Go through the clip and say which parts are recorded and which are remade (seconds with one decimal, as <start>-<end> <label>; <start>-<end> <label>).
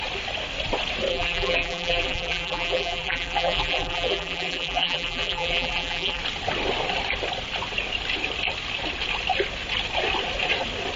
0.0-1.1 recorded; 1.1-6.2 remade; 6.2-11.0 recorded